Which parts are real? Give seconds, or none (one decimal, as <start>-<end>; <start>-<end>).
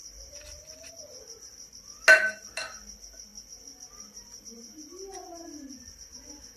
0.9-6.6